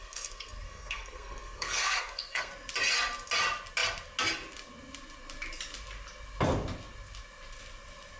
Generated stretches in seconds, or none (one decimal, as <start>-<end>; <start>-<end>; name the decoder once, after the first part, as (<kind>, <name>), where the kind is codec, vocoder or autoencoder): 0.0-2.5 (codec, SNAC)